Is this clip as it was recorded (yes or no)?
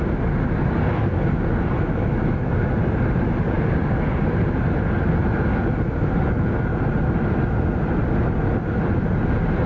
yes